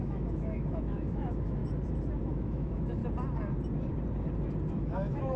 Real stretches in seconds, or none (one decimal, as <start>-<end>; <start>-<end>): 1.6-2.2; 3.0-4.7